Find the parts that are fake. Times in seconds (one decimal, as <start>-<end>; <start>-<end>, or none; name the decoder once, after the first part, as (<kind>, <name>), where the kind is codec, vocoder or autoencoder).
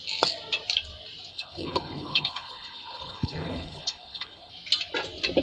1.3-4.5 (codec, HILCodec)